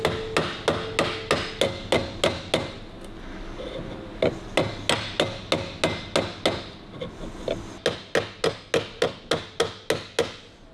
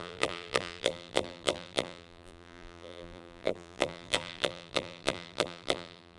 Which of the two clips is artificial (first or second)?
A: second